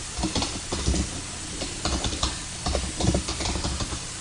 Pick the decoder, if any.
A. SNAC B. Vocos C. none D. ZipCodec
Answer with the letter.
C